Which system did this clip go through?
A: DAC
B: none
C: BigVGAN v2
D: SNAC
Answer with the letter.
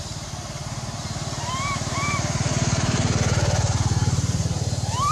C